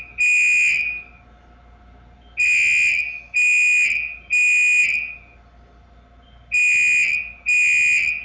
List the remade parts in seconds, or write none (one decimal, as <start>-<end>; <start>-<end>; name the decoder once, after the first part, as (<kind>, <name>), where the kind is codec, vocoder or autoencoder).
none